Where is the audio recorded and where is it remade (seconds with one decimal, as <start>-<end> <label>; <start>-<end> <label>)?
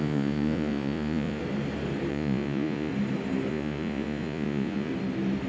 0.0-1.4 remade; 1.4-2.1 recorded; 2.1-2.9 remade; 2.9-3.5 recorded; 3.5-4.9 remade; 4.9-5.5 recorded